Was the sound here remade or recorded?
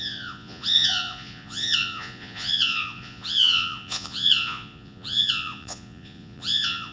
remade